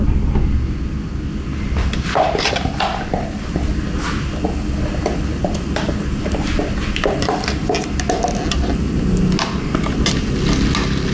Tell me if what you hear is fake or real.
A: real